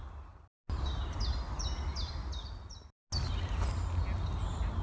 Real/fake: real